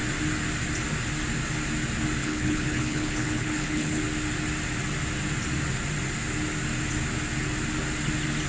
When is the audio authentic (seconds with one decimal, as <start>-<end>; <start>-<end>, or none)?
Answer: 0.0-2.2; 4.0-8.5

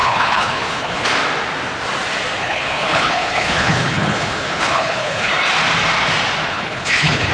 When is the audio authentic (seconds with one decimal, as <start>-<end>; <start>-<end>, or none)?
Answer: 1.1-2.4; 5.3-6.5